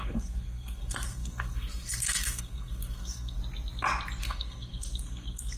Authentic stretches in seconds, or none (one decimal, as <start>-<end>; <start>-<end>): 3.4-4.2